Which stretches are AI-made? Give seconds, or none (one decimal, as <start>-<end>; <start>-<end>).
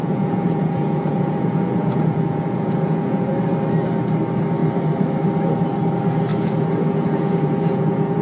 0.0-3.3; 6.3-8.2